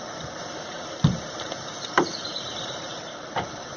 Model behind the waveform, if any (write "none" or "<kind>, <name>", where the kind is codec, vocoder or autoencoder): vocoder, BigVGAN v2